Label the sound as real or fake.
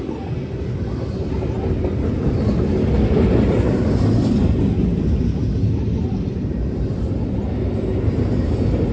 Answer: real